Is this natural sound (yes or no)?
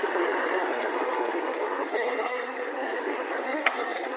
no